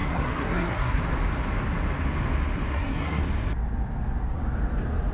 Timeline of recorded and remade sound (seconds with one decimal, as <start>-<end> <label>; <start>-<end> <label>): 0.0-1.0 remade; 1.0-2.7 recorded; 2.7-3.2 remade; 3.2-5.1 recorded